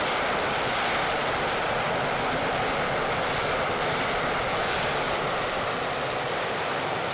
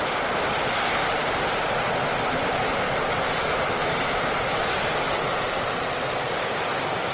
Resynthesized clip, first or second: second